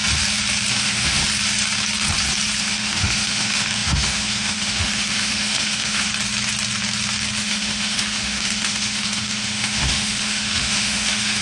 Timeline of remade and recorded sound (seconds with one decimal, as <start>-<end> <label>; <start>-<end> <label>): 0.0-0.7 recorded; 0.7-1.2 remade; 1.2-2.6 recorded; 2.6-6.1 remade; 6.1-7.4 recorded; 7.4-11.4 remade